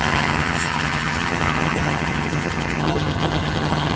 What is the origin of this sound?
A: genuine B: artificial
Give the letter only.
B